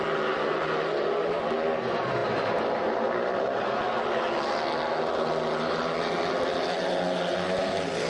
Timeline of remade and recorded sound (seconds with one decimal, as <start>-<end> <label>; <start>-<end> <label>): 0.0-8.1 recorded